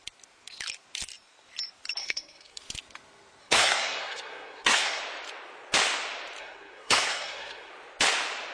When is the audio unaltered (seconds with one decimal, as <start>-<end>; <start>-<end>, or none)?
0.0-2.0; 2.6-3.4; 5.0-6.4; 7.7-8.5